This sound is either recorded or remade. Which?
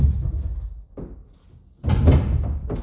recorded